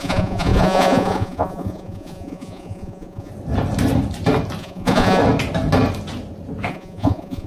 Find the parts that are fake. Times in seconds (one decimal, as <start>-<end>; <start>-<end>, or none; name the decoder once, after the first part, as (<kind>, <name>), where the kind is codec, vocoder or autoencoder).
0.0-3.3 (vocoder, Vocos); 4.6-5.2; 6.7-7.5